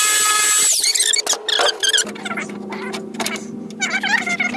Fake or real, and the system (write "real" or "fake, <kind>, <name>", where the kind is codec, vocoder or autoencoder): real